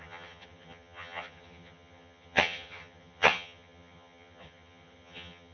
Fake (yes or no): yes